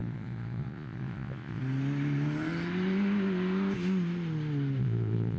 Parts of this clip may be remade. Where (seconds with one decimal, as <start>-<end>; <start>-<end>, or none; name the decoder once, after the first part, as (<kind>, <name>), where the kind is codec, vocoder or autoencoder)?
0.0-1.6 (vocoder, Vocos); 4.8-5.4